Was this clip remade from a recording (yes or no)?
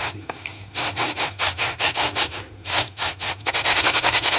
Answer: yes